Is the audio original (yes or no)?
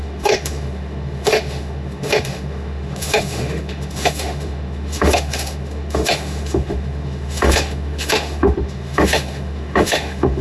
no